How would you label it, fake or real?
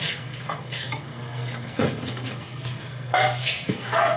fake